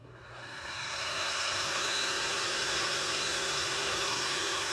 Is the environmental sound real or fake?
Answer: fake